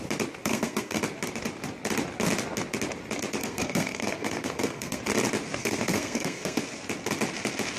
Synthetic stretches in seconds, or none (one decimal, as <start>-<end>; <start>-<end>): 0.4-1.0; 3.4-5.0; 5.6-6.6